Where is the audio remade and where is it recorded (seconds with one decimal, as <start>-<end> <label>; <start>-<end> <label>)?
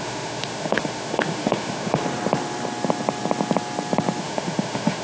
0.0-2.0 remade; 2.0-4.2 recorded; 4.2-5.0 remade